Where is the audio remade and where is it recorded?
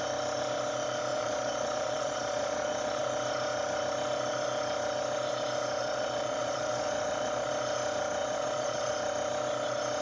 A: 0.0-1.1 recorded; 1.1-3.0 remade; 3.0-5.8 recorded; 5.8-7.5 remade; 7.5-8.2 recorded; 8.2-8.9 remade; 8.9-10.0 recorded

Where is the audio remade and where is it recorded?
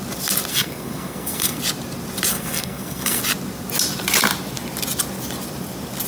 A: 0.0-0.5 recorded; 0.5-1.6 remade; 1.6-2.3 recorded; 2.3-3.2 remade; 3.2-6.1 recorded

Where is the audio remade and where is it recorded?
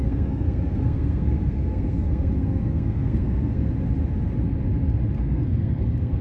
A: 0.0-3.7 remade; 3.7-5.2 recorded; 5.2-6.2 remade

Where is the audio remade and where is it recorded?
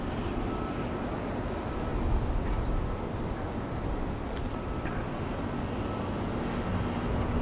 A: 0.0-7.4 recorded